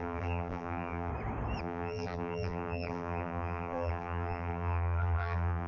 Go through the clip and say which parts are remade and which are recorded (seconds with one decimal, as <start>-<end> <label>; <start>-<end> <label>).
0.0-1.1 remade; 1.1-1.6 recorded; 1.6-5.7 remade